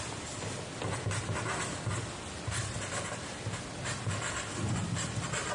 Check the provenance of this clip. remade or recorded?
recorded